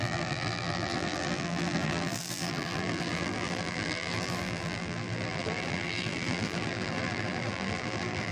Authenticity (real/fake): fake